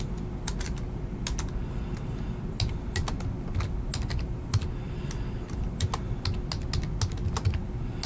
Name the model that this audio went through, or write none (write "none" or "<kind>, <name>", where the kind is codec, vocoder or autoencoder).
none